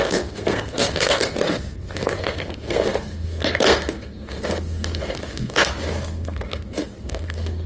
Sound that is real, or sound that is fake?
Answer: fake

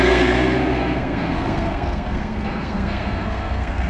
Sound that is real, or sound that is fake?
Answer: fake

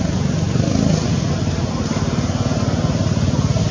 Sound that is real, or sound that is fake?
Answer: real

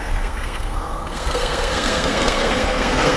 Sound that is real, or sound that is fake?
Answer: fake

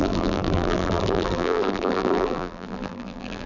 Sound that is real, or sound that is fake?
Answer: fake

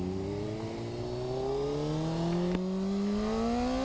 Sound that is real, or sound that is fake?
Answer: real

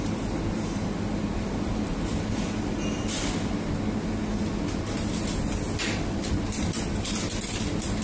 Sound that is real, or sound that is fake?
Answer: real